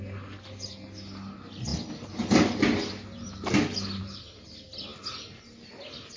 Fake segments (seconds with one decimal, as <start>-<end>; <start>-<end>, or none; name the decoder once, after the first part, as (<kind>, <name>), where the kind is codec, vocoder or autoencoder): none